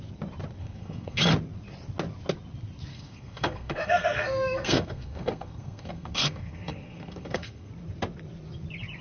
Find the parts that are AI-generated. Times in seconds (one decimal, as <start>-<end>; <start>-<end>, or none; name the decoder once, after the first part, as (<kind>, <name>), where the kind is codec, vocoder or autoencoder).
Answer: 0.6-1.2 (codec, SNAC); 2.9-7.7